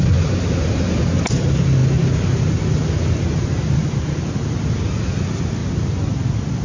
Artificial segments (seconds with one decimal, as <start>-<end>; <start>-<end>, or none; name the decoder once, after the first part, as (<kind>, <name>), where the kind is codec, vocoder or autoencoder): none